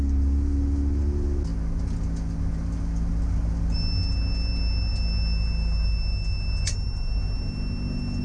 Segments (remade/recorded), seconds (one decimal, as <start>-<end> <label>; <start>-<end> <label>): 0.0-8.2 recorded